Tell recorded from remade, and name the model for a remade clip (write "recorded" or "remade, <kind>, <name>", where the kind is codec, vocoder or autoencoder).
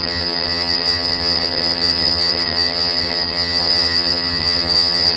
remade, vocoder, HiFi-GAN